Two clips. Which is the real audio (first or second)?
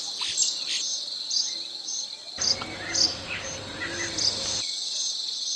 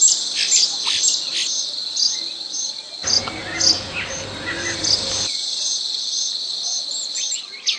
second